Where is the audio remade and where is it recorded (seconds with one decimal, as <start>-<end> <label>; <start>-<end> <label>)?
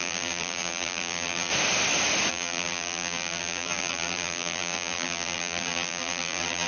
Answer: 0.0-1.5 remade; 1.5-2.3 recorded; 2.3-6.7 remade